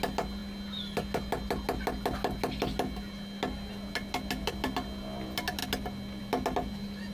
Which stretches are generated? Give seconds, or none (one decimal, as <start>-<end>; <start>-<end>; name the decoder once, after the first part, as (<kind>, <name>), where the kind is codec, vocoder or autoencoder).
none